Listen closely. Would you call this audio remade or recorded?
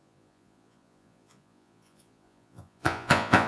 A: remade